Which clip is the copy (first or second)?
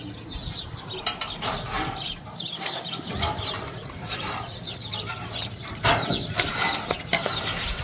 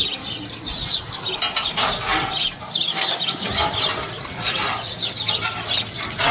first